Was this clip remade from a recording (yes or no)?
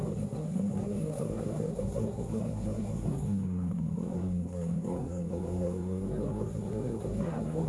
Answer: yes